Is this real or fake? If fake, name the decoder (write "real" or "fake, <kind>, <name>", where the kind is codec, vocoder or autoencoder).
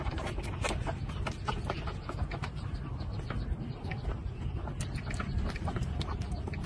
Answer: real